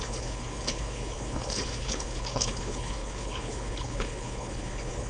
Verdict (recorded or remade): remade